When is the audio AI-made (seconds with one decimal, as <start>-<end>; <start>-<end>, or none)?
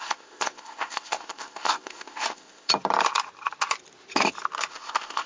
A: 0.0-2.7; 4.7-5.3